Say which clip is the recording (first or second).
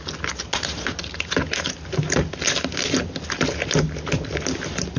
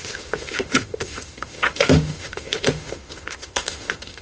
first